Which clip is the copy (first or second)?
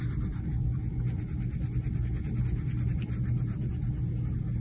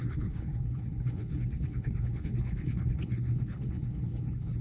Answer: second